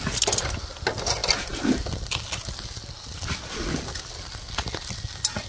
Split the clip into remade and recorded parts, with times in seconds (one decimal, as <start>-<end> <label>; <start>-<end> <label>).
0.0-5.5 recorded